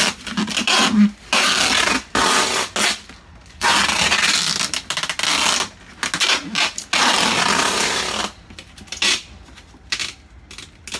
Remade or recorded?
recorded